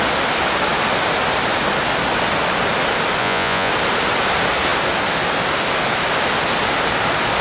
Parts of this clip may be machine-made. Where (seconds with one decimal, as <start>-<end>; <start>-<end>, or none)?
3.2-3.7